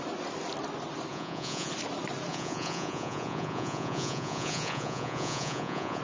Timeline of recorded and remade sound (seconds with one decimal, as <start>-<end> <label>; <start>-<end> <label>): 0.0-1.1 recorded; 1.1-1.7 remade; 1.7-2.3 recorded; 2.3-6.0 remade